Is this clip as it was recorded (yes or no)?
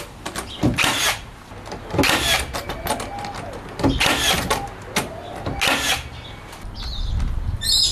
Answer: yes